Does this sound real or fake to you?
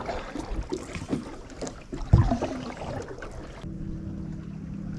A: real